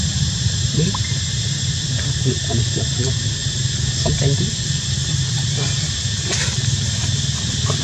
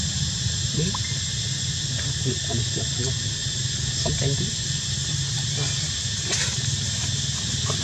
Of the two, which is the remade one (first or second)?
first